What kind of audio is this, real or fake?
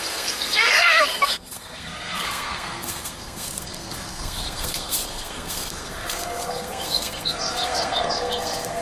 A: fake